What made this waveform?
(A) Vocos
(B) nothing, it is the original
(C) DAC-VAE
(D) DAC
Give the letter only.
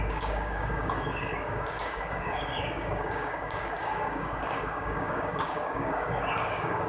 D